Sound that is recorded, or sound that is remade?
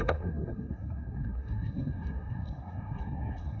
remade